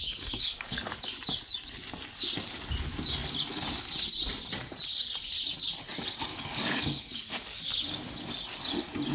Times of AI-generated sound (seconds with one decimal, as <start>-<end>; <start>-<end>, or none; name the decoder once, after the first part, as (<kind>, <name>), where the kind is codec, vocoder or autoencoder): 0.0-1.2 (codec, DAC); 6.3-7.6